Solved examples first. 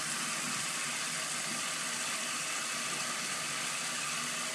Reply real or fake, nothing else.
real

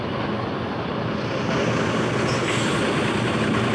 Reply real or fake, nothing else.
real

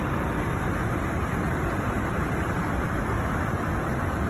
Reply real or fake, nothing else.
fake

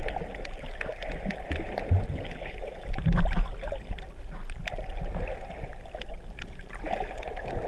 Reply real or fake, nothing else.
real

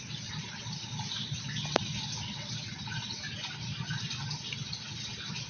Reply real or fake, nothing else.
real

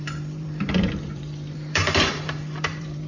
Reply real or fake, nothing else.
fake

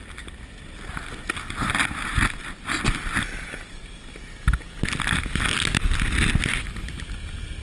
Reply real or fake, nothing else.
real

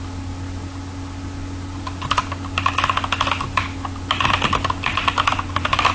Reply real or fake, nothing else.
real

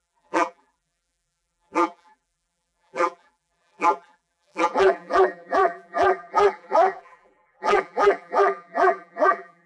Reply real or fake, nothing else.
fake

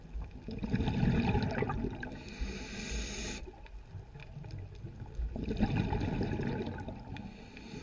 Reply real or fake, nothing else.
real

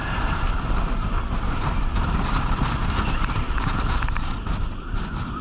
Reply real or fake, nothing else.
real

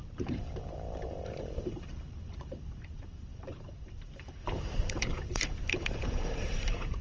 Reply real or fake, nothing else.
fake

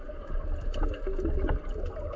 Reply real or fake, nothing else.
real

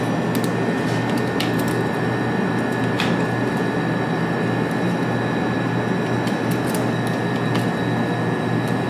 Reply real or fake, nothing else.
real